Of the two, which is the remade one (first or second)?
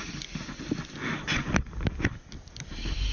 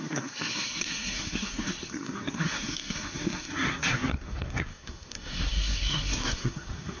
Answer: second